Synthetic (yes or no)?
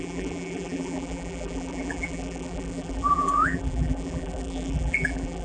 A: yes